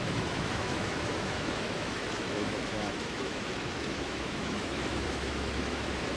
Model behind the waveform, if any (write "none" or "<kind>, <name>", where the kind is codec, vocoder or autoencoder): autoencoder, DAC-VAE